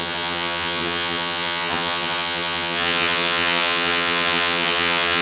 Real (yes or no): no